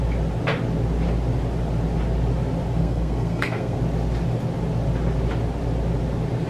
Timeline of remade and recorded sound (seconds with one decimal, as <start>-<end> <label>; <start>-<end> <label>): 0.0-2.8 recorded; 2.8-3.8 remade; 3.8-6.5 recorded